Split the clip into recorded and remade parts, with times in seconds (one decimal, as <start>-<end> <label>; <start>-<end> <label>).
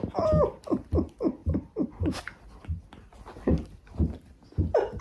0.0-1.4 recorded; 1.4-2.2 remade; 2.2-5.0 recorded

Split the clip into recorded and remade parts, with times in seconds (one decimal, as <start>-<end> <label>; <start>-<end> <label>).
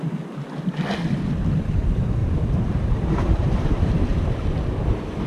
0.0-2.2 recorded; 2.2-3.9 remade; 3.9-5.3 recorded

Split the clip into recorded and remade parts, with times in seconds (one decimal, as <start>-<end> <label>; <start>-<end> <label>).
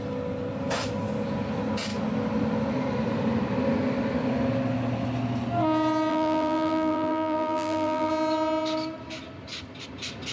0.0-6.1 recorded; 6.1-8.1 remade; 8.1-10.3 recorded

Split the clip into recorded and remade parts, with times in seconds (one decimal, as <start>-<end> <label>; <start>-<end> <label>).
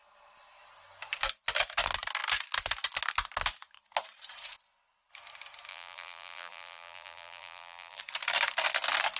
0.0-5.7 recorded; 5.7-8.0 remade; 8.0-9.2 recorded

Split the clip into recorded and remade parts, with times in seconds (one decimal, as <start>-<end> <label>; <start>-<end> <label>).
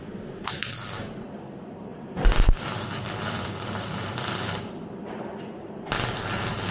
0.0-1.9 recorded; 1.9-5.9 remade; 5.9-6.7 recorded